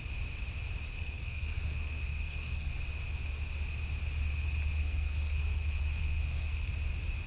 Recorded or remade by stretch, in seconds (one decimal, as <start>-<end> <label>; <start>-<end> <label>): 0.0-0.9 recorded; 0.9-2.7 remade; 2.7-4.8 recorded; 4.8-6.7 remade; 6.7-7.3 recorded